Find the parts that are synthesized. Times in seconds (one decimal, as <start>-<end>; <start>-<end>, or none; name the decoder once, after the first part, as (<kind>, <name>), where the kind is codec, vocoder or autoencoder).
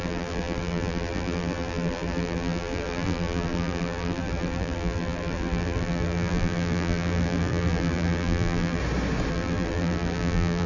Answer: 0.0-8.8 (vocoder, BigVGAN v2); 9.3-10.7